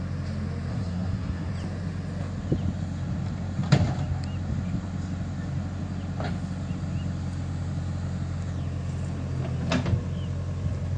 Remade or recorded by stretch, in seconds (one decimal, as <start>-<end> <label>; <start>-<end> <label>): 0.0-0.7 recorded; 0.7-1.5 remade; 1.5-11.0 recorded